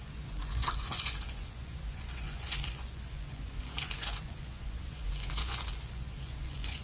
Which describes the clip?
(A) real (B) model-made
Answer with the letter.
B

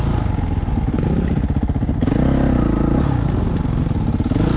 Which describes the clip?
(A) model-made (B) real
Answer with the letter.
B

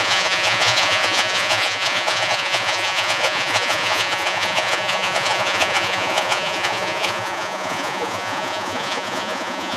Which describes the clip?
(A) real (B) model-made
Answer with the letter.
B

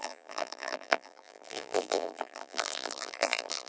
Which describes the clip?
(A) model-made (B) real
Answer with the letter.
A